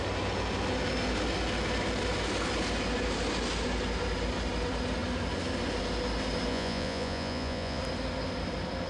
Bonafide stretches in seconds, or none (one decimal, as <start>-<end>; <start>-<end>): 0.0-6.5; 7.8-8.9